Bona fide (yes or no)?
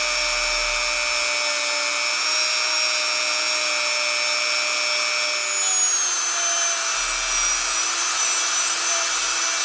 yes